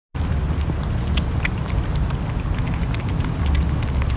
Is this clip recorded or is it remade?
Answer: recorded